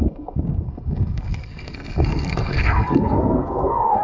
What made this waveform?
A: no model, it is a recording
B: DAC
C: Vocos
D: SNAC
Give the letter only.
D